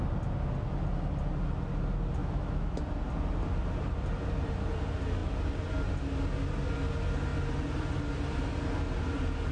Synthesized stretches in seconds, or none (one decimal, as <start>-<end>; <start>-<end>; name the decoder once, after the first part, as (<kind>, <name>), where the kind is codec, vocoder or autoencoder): 2.2-2.8 (autoencoder, DAC-VAE)